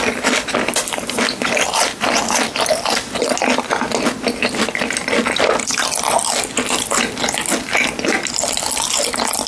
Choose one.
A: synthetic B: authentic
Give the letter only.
B